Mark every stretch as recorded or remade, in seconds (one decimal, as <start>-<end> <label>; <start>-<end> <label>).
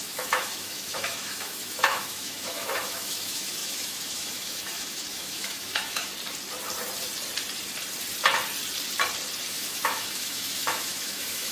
0.0-6.1 remade; 6.1-9.5 recorded; 9.5-11.5 remade